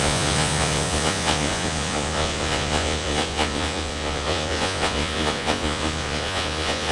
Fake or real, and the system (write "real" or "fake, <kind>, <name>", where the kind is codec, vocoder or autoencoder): fake, vocoder, Vocos